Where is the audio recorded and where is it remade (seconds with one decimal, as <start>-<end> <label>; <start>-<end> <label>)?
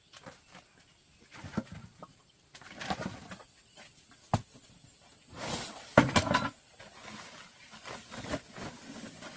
0.0-9.4 recorded